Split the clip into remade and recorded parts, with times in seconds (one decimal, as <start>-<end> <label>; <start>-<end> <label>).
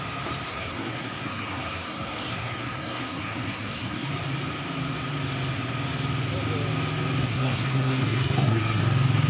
0.0-0.5 recorded; 0.5-4.1 remade; 4.1-7.2 recorded; 7.2-8.8 remade; 8.8-9.3 recorded